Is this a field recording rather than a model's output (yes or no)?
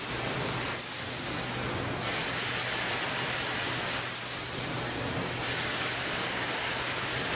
yes